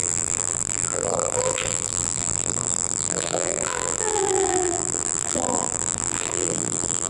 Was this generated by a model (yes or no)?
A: yes